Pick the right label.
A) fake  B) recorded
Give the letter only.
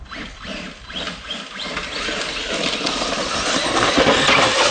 B